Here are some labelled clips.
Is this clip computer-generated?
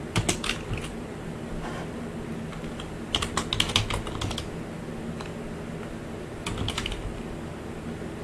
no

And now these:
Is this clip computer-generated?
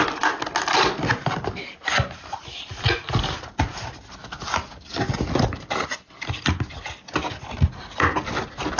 no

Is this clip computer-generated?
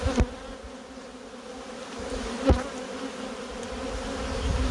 no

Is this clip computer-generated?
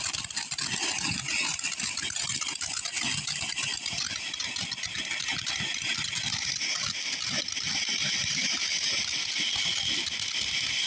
no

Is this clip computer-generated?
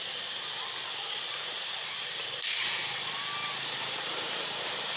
no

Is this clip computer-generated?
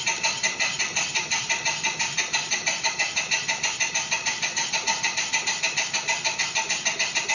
no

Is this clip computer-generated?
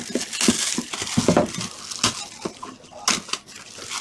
no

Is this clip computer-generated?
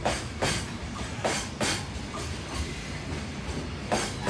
no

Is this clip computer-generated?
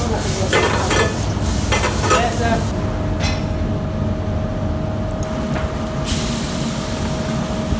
no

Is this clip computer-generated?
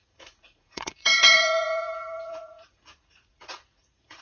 yes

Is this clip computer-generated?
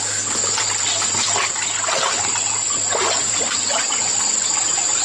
no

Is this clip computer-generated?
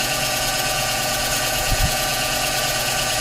yes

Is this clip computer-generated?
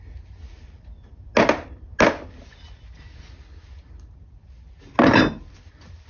no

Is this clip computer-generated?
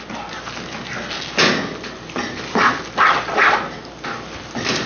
no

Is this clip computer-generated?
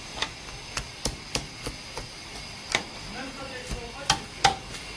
no